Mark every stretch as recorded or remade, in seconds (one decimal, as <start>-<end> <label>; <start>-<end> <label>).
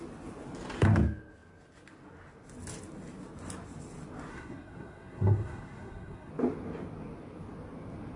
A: 0.0-4.3 recorded; 4.3-6.3 remade; 6.3-8.2 recorded